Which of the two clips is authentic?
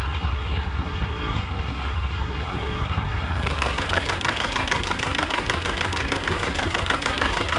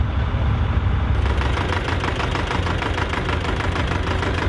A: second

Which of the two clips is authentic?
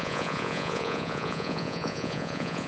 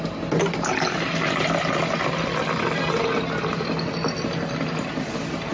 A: second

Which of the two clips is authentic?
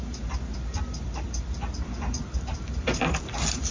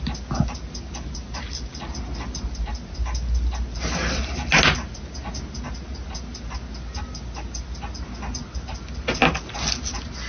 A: second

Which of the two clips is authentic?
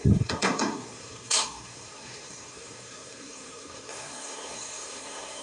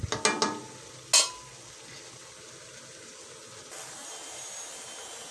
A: second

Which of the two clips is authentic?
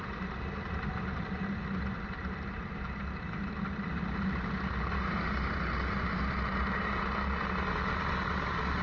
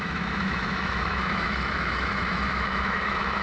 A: first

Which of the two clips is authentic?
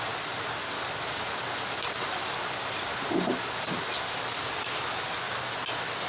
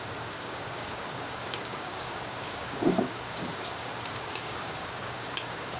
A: first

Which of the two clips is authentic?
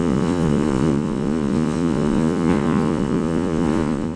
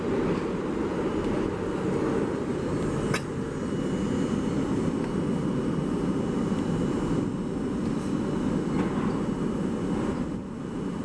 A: second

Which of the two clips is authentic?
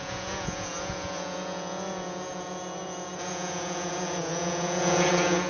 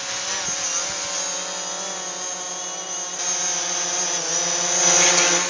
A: second